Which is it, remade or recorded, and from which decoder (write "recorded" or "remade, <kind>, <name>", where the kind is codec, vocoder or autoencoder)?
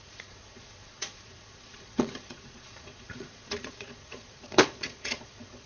remade, vocoder, Vocos